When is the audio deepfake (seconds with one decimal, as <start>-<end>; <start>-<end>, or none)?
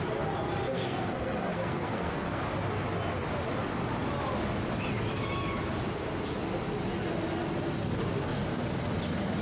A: 0.7-2.4